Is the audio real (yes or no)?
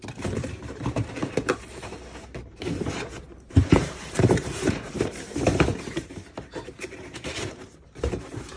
no